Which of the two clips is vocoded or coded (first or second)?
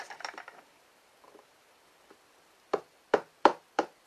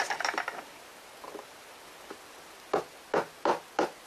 first